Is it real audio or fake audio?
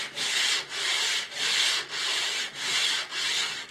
real